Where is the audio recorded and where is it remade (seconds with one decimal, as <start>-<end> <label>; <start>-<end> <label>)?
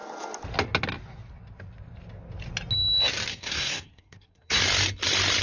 0.0-3.3 recorded; 3.3-4.6 remade; 4.6-5.4 recorded